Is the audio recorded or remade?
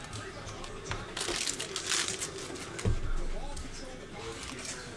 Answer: recorded